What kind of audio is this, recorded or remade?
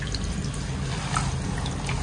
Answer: recorded